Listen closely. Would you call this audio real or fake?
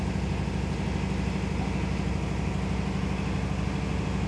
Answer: real